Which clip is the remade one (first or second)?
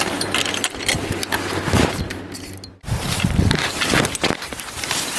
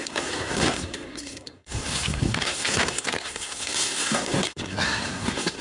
second